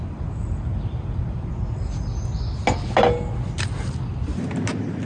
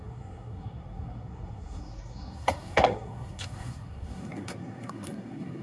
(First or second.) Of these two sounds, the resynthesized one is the second